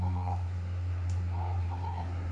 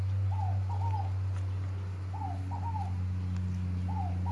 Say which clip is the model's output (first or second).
first